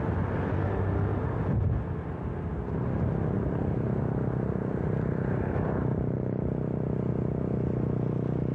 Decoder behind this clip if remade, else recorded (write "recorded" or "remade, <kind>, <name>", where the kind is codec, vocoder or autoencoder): recorded